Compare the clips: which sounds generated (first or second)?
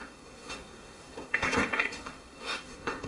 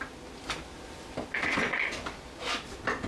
first